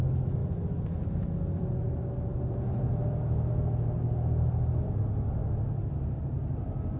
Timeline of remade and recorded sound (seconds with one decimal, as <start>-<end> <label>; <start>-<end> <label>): 0.0-7.0 recorded